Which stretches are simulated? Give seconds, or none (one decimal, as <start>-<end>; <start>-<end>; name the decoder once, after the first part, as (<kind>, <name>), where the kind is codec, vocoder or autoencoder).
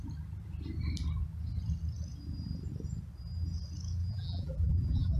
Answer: 4.0-5.2 (vocoder, BigVGAN v2)